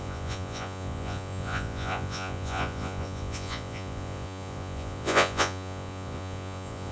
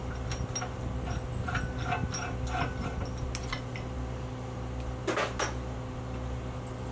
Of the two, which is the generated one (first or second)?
first